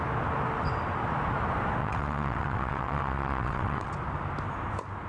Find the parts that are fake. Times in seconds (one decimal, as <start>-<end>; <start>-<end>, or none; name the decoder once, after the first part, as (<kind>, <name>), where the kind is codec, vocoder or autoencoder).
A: 1.8-3.9 (vocoder, WaveNeXt)